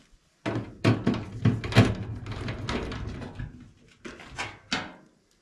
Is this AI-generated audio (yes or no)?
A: no